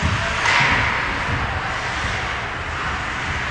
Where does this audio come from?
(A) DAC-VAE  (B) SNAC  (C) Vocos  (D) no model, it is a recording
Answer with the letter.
D